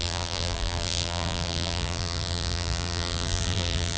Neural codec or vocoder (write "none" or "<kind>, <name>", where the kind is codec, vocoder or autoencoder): vocoder, BigVGAN v2